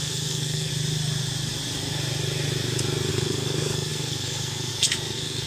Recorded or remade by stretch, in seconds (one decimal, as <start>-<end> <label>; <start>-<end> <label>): 0.0-0.7 remade; 0.7-3.1 recorded; 3.1-5.5 remade